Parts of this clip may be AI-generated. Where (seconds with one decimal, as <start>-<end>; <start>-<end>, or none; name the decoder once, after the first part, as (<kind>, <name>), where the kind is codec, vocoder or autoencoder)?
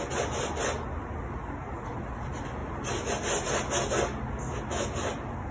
none